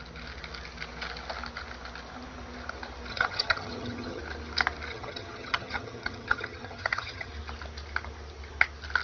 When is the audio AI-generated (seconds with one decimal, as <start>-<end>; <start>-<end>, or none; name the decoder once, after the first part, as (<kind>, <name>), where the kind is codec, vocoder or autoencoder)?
3.1-4.2 (vocoder, HiFi-GAN); 4.9-7.3